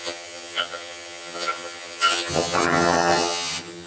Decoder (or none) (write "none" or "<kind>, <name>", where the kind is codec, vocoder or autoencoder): vocoder, HiFi-GAN